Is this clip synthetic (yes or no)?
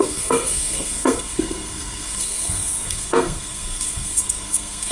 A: yes